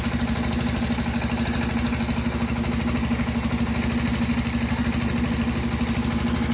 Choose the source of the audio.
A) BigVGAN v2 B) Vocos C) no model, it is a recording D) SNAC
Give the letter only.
C